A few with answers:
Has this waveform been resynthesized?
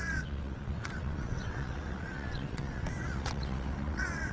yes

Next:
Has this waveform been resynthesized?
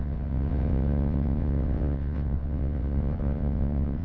yes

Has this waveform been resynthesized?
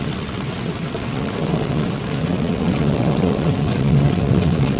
yes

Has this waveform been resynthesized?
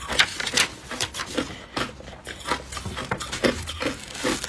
no